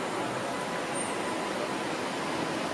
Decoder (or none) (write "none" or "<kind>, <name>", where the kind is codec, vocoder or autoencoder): none